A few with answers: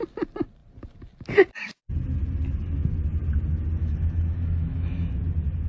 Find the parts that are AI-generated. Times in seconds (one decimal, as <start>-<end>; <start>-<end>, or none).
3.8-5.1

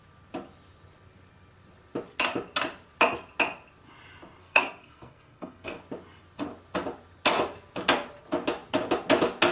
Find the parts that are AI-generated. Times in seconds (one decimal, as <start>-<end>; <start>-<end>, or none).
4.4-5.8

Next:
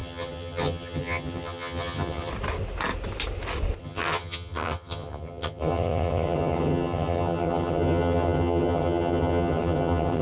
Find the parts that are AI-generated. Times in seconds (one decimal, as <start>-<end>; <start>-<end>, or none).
0.0-2.3; 3.8-10.2

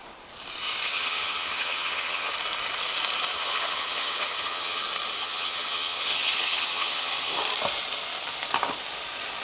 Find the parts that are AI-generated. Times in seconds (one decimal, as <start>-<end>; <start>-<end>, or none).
0.9-2.3; 3.3-4.8; 5.2-7.3